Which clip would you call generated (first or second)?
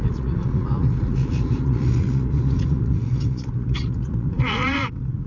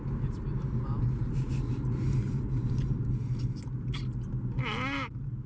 first